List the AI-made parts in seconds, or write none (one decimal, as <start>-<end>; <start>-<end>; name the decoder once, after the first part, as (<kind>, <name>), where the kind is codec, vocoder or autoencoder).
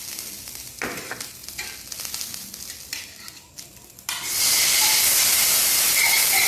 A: none